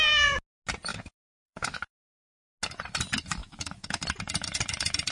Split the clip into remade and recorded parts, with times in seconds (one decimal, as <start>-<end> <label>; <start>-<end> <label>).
0.0-0.9 recorded; 0.9-2.5 remade; 2.5-3.4 recorded; 3.4-4.0 remade; 4.0-5.1 recorded

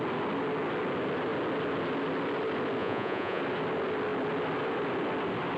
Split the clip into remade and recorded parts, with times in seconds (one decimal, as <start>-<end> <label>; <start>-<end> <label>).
0.0-2.8 recorded; 2.8-3.4 remade; 3.4-5.6 recorded

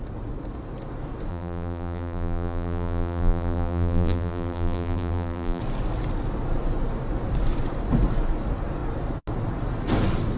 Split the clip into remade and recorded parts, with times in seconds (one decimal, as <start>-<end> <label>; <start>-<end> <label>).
0.0-1.3 recorded; 1.3-5.6 remade; 5.6-10.4 recorded

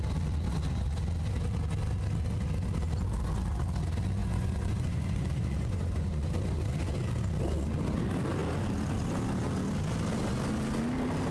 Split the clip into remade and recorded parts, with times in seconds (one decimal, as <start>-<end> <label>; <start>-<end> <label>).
0.0-4.2 recorded; 4.2-6.3 remade; 6.3-11.3 recorded

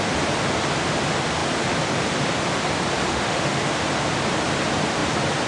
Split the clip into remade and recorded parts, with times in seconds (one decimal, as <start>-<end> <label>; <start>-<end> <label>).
0.0-3.1 recorded; 3.1-3.6 remade; 3.6-5.5 recorded

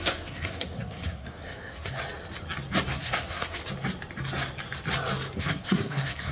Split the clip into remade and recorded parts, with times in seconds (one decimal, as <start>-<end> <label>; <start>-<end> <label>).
0.0-2.0 remade; 2.0-2.9 recorded; 2.9-3.6 remade; 3.6-5.4 recorded; 5.4-6.3 remade

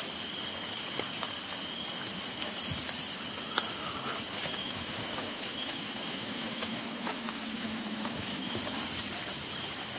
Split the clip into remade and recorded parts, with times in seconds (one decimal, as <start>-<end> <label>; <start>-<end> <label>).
0.0-4.6 recorded; 4.6-8.6 remade; 8.6-10.0 recorded

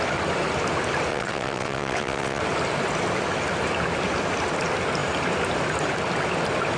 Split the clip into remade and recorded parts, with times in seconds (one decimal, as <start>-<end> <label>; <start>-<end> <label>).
0.0-1.1 recorded; 1.1-2.4 remade; 2.4-6.8 recorded